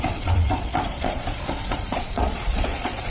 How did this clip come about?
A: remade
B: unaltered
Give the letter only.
A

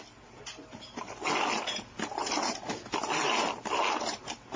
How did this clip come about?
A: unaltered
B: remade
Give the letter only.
A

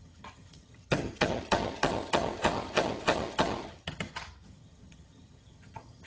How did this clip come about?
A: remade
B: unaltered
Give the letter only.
A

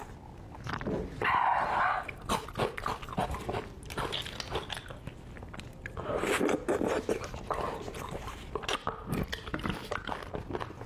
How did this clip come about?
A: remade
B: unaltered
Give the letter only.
B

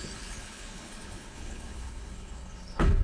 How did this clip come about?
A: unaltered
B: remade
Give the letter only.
B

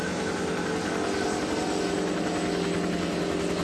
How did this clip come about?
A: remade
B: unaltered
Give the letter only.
B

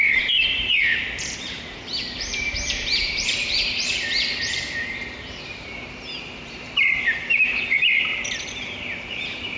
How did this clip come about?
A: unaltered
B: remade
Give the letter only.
B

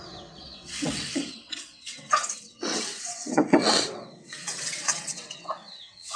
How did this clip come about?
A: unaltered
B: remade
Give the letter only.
B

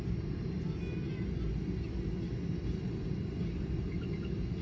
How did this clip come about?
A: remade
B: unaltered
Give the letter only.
B